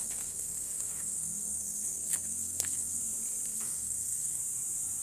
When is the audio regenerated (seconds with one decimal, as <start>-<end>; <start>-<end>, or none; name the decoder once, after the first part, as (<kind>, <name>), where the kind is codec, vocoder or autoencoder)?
0.0-3.0 (codec, SNAC); 3.5-4.4